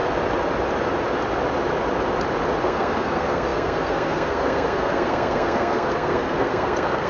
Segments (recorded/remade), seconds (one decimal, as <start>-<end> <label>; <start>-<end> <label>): 0.0-2.6 recorded; 2.6-7.1 remade